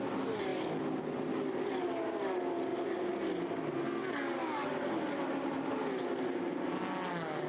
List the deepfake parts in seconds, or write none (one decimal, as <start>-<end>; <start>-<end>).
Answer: none